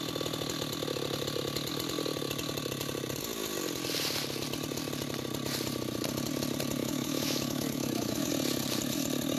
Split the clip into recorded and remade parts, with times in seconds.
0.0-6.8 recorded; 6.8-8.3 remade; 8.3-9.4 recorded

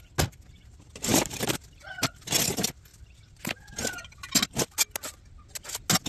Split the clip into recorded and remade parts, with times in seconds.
0.0-6.1 recorded

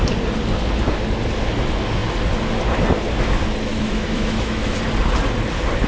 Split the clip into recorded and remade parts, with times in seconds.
0.0-3.7 recorded; 3.7-4.8 remade; 4.8-5.9 recorded

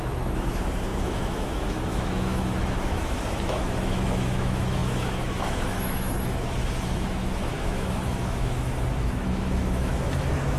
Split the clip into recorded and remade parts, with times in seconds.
0.0-10.6 remade

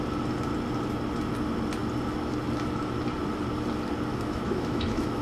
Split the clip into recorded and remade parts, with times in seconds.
0.0-4.1 recorded; 4.1-5.2 remade

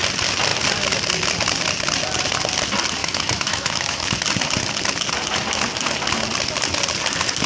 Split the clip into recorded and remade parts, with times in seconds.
0.0-3.0 recorded; 3.0-4.2 remade; 4.2-7.5 recorded

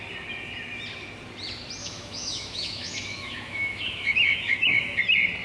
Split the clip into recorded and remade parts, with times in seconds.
0.0-1.8 recorded; 1.8-5.0 remade; 5.0-5.4 recorded